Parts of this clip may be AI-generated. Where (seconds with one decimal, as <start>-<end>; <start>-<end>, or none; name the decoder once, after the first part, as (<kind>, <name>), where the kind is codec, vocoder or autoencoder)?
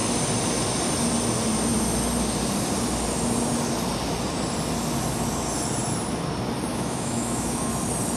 6.7-7.7 (autoencoder, DAC-VAE)